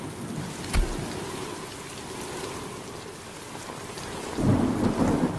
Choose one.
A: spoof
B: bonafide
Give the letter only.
B